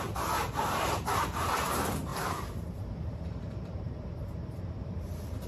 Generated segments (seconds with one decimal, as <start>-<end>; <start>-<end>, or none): 0.0-5.5